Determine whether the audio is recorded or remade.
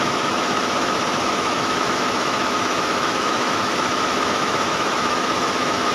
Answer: remade